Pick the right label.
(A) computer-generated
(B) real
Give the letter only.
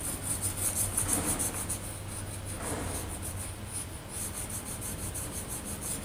B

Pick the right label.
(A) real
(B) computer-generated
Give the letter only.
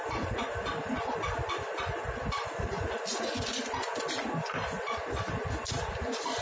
A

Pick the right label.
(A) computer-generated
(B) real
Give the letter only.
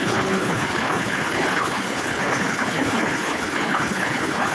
A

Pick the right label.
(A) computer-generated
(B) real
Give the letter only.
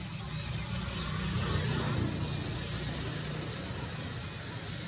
B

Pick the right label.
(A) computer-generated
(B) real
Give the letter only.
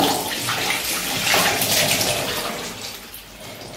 B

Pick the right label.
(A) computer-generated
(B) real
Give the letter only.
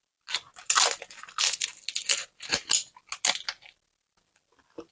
B